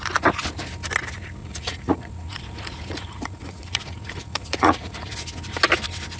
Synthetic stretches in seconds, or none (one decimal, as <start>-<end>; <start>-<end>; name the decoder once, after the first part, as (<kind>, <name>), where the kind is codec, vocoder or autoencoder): 1.4-5.1 (vocoder, Vocos)